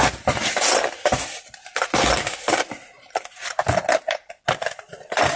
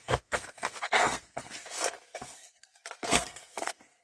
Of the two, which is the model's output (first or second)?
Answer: second